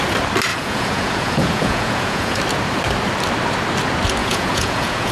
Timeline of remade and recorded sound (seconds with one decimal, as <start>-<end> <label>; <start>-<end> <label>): 0.0-0.5 recorded; 0.5-2.4 remade; 2.4-4.2 recorded; 4.2-5.1 remade